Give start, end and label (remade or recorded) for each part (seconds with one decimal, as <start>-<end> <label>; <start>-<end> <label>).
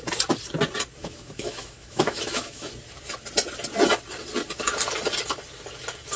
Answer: 0.0-1.0 recorded; 1.0-2.7 remade; 2.7-6.2 recorded